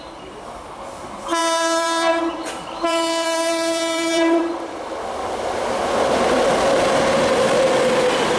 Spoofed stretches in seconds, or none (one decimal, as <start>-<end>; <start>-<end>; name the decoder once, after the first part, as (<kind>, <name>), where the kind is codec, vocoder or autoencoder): 1.4-5.0 (vocoder, BigVGAN v2); 5.8-6.5